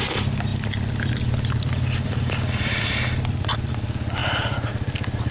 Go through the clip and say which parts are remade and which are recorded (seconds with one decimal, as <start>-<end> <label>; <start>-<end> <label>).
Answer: 0.0-0.5 recorded; 0.5-3.7 remade; 3.7-4.2 recorded; 4.2-4.7 remade; 4.7-5.3 recorded